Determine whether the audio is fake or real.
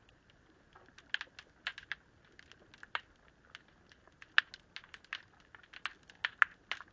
real